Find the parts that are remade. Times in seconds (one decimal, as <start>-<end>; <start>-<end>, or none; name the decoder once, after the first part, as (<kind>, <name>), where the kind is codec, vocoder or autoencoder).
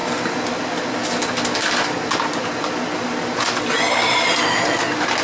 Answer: none